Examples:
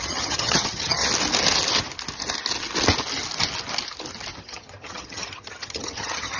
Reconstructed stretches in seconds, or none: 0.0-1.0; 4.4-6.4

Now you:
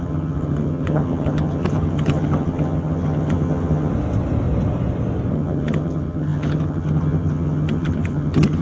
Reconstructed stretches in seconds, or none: 0.0-3.9; 5.3-8.6

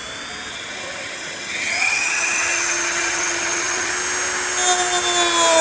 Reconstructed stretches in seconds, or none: 0.5-3.9